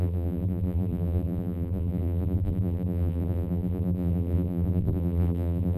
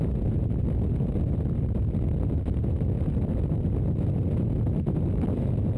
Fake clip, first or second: first